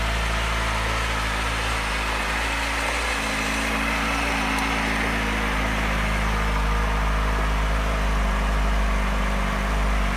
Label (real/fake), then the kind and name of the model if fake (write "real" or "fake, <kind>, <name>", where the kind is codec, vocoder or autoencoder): real